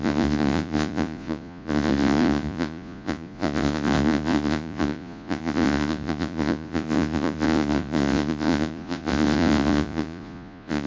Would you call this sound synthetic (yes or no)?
yes